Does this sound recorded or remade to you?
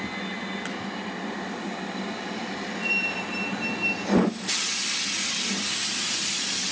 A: recorded